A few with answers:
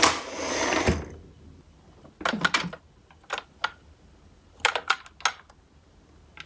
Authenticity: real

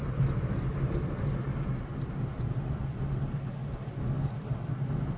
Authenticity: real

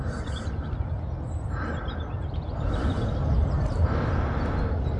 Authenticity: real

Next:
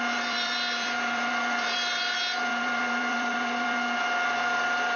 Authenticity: fake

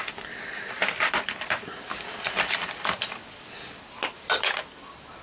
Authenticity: fake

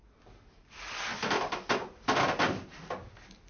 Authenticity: real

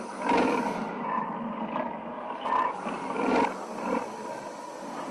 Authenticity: real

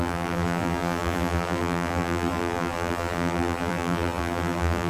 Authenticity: fake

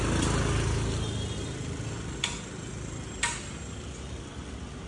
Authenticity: real